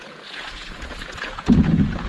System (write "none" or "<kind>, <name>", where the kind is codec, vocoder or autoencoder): vocoder, Vocos